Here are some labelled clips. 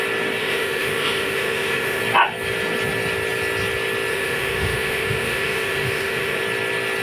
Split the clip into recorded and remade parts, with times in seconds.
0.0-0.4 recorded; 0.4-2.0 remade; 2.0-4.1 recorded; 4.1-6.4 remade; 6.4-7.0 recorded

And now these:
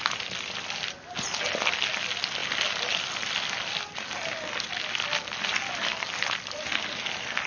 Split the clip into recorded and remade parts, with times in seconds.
0.0-7.5 recorded

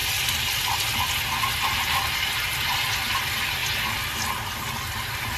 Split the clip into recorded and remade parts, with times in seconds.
0.0-5.4 recorded